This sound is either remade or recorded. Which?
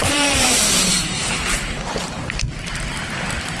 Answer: remade